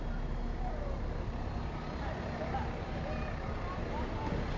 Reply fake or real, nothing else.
real